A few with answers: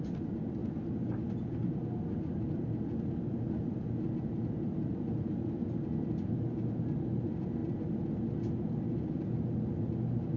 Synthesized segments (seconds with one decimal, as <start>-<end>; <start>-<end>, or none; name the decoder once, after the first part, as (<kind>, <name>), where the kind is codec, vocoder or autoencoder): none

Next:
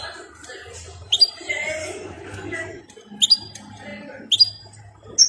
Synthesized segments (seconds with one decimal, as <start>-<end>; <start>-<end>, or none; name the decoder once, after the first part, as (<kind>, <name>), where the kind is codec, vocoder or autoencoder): 1.8-2.8 (codec, DAC)

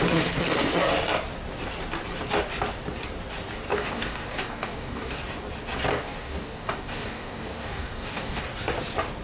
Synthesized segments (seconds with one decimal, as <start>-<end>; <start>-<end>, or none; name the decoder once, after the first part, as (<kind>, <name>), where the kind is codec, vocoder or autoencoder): 3.7-5.2 (codec, DAC); 5.9-8.4

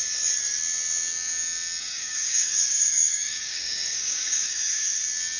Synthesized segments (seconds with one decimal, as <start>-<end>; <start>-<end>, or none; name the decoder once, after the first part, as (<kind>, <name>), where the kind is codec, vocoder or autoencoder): 1.8-5.0 (codec, DAC)

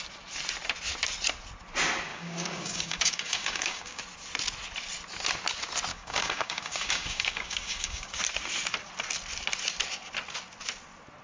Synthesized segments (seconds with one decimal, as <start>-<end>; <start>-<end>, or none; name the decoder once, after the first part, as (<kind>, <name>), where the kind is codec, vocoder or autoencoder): 2.1-4.0 (codec, DAC); 5.9-8.1